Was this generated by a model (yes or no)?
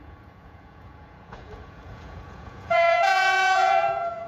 yes